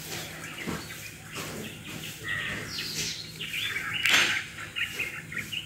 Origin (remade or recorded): recorded